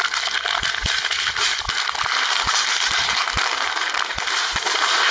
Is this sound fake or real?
real